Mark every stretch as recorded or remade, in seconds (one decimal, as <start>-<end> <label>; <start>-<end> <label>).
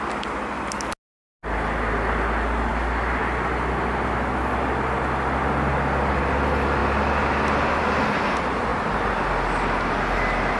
0.0-10.6 recorded